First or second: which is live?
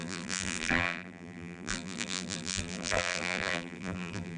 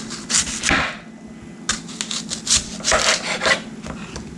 second